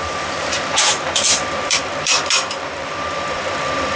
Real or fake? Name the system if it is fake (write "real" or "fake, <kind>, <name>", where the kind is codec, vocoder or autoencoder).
fake, vocoder, BigVGAN v2